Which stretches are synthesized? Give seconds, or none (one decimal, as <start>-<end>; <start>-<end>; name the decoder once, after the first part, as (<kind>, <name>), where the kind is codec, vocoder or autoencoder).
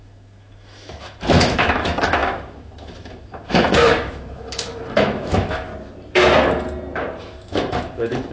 0.0-5.7 (autoencoder, DAC-VAE); 7.2-8.3